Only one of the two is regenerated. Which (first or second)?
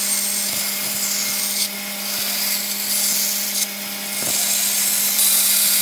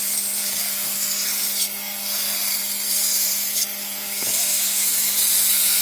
second